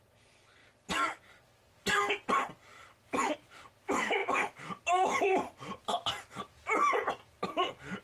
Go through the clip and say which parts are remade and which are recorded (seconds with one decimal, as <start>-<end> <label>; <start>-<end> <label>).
0.0-8.0 recorded